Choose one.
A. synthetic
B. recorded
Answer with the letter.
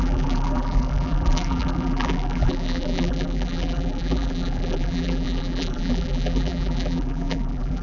A